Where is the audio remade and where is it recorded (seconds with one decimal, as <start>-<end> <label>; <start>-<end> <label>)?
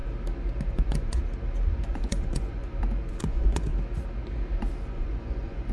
0.0-0.7 recorded; 0.7-1.2 remade; 1.2-1.9 recorded; 1.9-2.6 remade; 2.6-3.1 recorded; 3.1-3.7 remade; 3.7-4.8 recorded; 4.8-5.7 remade